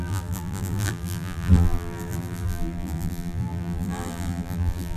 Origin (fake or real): fake